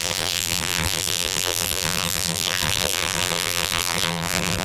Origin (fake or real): fake